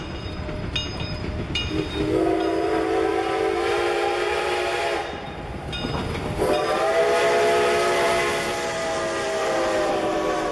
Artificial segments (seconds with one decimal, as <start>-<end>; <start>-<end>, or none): none